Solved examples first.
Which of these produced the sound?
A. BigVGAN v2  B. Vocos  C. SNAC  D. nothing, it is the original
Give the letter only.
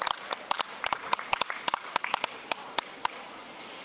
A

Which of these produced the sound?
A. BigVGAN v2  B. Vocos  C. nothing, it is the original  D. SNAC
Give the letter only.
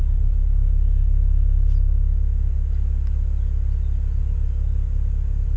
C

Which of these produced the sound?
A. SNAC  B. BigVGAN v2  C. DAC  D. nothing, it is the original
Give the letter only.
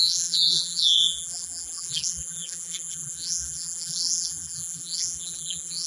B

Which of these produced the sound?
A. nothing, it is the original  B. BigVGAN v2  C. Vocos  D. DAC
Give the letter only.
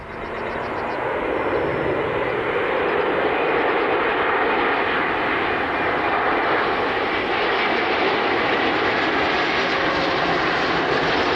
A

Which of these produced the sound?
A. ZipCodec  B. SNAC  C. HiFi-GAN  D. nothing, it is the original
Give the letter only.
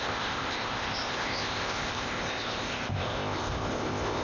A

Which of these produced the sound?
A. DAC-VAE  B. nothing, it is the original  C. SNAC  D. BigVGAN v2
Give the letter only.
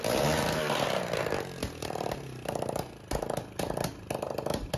B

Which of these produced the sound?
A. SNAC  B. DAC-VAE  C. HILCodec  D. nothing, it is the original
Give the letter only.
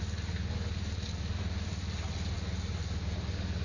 D